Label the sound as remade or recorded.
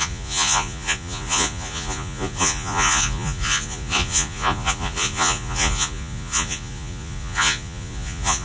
remade